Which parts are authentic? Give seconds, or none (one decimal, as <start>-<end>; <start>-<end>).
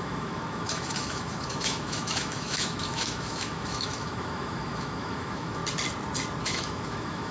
5.6-6.4